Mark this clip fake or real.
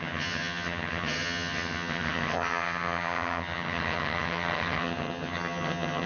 fake